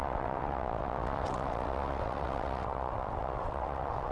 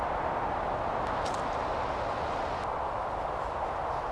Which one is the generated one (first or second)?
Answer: first